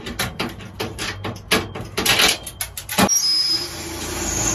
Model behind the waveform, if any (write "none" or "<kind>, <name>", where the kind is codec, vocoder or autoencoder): none